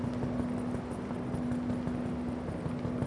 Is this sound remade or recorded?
recorded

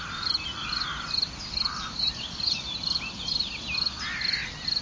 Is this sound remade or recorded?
recorded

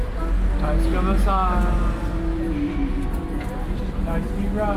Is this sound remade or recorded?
recorded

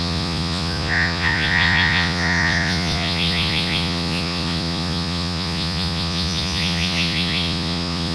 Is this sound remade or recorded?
remade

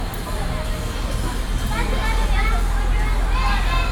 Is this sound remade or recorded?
recorded